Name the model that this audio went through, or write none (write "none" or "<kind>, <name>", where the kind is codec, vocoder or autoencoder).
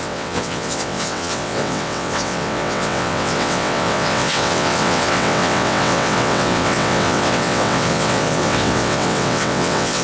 vocoder, WaveNeXt